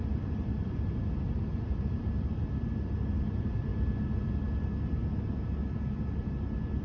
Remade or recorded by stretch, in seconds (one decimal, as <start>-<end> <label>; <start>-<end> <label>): 0.0-6.8 recorded